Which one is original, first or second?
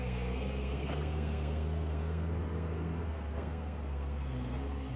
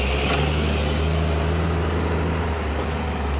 second